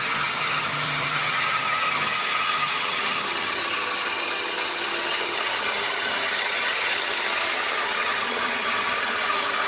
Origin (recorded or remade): remade